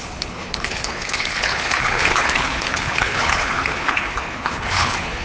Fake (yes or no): yes